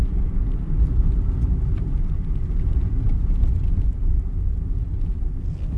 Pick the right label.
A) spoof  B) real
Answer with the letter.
B